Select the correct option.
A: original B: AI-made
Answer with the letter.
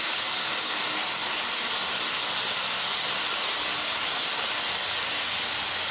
A